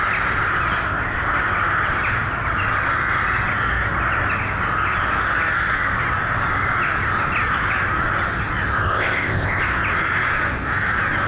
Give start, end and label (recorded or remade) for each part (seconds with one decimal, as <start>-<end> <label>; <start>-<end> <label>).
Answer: 0.0-8.8 recorded; 8.8-9.6 remade; 9.6-11.3 recorded